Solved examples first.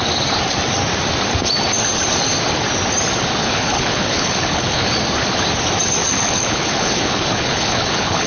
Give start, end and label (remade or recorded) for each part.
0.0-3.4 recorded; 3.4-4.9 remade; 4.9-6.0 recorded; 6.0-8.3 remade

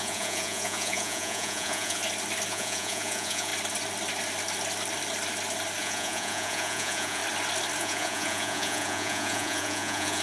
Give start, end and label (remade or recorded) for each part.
0.0-2.0 remade; 2.0-2.5 recorded; 2.5-3.5 remade; 3.5-5.8 recorded; 5.8-7.2 remade; 7.2-7.8 recorded; 7.8-10.2 remade

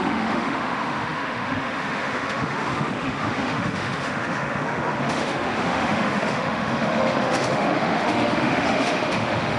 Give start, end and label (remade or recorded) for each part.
0.0-9.6 remade

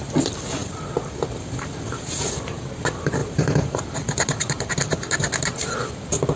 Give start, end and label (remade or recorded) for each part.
0.0-3.2 recorded; 3.2-3.9 remade; 3.9-6.4 recorded

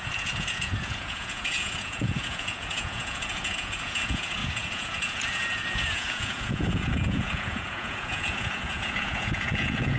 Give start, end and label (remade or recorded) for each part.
0.0-10.0 remade